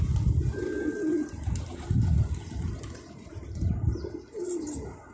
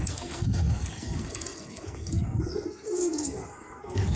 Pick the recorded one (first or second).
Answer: first